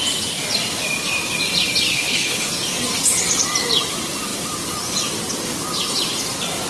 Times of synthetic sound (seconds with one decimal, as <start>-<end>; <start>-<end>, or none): 1.9-2.5